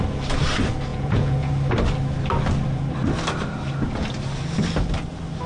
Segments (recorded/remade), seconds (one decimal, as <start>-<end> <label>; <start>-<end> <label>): 0.0-0.9 recorded; 0.9-1.5 remade; 1.5-5.5 recorded